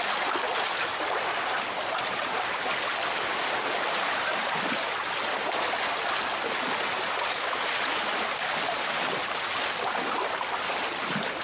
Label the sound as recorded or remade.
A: recorded